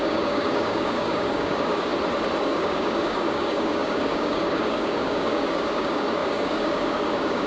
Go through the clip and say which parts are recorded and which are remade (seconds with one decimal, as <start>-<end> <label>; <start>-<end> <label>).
0.0-1.9 remade; 1.9-2.4 recorded; 2.4-7.5 remade